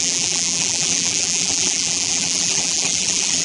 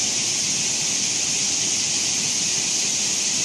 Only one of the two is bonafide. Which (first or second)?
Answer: second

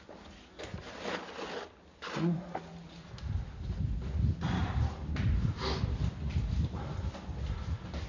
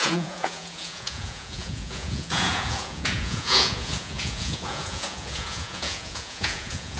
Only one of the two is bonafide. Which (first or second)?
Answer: first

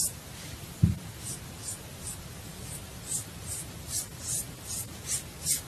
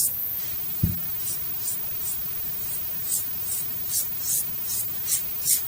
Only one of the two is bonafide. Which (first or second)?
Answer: second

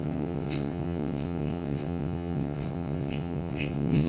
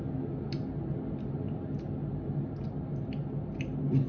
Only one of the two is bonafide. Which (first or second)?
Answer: second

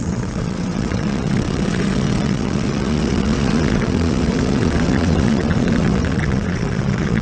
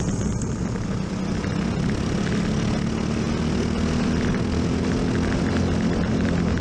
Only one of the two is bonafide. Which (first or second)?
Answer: second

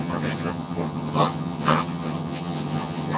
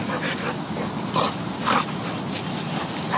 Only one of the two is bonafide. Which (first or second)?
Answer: second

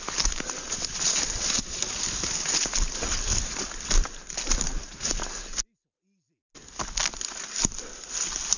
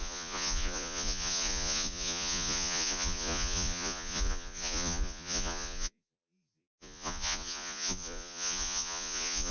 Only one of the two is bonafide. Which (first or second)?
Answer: first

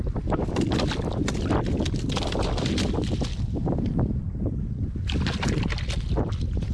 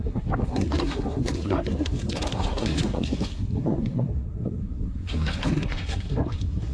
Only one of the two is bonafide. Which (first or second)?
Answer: first